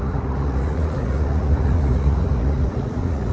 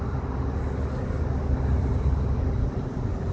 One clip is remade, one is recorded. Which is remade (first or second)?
first